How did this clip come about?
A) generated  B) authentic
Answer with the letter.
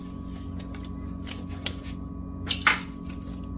B